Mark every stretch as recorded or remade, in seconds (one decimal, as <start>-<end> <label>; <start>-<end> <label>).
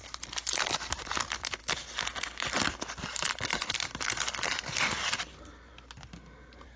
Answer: 0.0-6.8 recorded